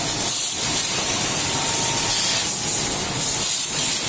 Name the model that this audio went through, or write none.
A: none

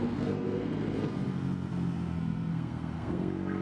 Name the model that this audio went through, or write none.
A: codec, SNAC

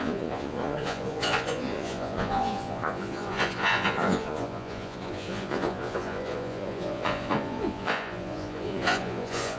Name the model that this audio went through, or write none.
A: vocoder, Vocos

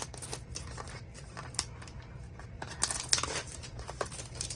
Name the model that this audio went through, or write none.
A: vocoder, BigVGAN v2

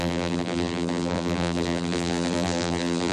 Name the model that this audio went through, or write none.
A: vocoder, BigVGAN v2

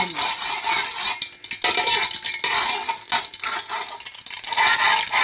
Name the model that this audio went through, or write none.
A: none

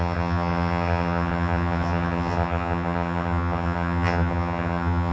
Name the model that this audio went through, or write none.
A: vocoder, HiFi-GAN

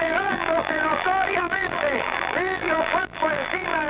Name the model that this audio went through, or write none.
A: vocoder, BigVGAN v2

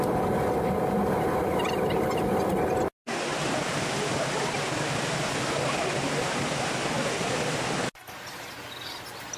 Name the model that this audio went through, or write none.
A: none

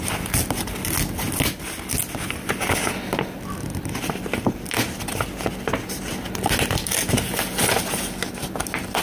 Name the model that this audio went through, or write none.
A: none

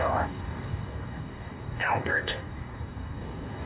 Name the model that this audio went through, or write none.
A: codec, DAC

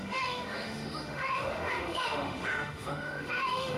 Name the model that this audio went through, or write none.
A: autoencoder, DAC-VAE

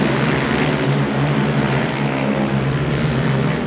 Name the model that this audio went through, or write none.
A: none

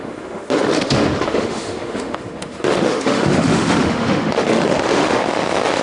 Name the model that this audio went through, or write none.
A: autoencoder, DAC-VAE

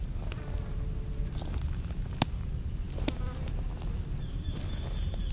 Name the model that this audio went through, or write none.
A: none